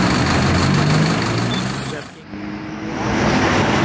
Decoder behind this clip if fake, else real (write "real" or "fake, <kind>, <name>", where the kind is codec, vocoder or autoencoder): real